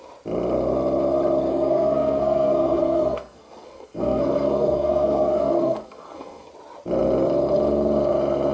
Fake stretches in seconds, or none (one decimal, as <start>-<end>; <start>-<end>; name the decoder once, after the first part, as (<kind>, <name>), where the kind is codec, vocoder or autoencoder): 1.5-6.5 (codec, SNAC)